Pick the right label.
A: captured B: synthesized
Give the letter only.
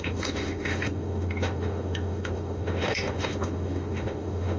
B